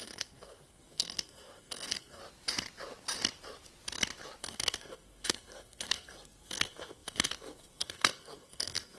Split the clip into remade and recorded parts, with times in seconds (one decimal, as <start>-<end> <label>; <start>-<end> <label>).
0.0-2.2 remade; 2.2-4.4 recorded; 4.4-9.0 remade